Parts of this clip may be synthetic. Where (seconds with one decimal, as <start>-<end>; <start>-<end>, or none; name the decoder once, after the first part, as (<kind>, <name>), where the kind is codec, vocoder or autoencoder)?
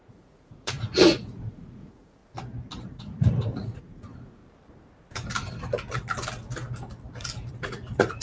0.0-2.2 (vocoder, Vocos); 2.8-4.4; 7.5-8.2